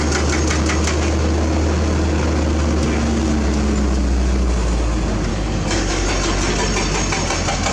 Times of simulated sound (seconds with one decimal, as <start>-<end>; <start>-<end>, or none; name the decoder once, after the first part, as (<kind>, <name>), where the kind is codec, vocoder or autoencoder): 5.3-6.1 (codec, DAC)